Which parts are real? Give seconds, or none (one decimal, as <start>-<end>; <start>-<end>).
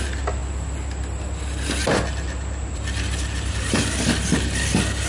0.0-5.1